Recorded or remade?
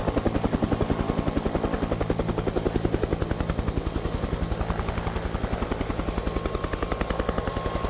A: recorded